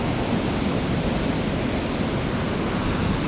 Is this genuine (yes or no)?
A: yes